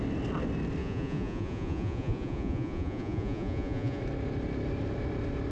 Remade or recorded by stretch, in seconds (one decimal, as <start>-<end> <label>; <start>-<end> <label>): 0.0-0.8 recorded; 0.8-4.0 remade; 4.0-5.5 recorded